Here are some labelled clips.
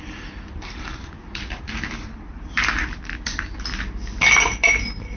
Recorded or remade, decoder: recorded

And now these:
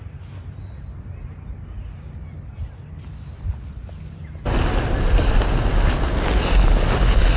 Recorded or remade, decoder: recorded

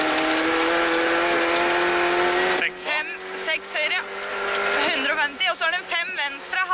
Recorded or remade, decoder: recorded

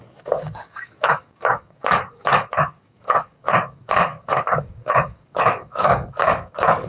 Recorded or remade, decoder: remade, codec, DAC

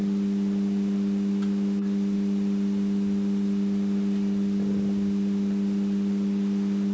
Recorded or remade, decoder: recorded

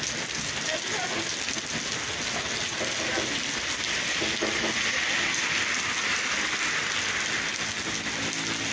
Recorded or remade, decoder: recorded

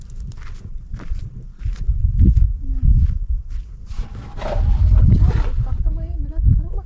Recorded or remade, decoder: recorded